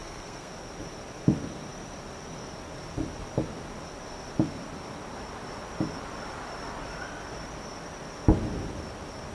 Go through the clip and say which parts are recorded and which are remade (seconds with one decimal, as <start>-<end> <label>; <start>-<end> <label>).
0.0-0.5 remade; 0.5-9.3 recorded